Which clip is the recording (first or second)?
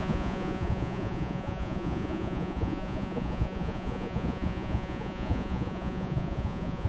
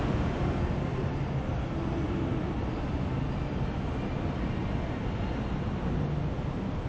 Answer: second